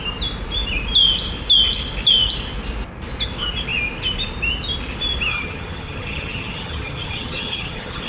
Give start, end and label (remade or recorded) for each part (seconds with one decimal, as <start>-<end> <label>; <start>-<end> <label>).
0.0-5.3 recorded; 5.3-8.1 remade